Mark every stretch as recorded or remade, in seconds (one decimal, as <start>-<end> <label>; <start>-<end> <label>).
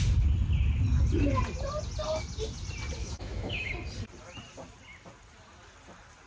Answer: 0.0-3.0 recorded; 3.0-3.7 remade; 3.7-6.3 recorded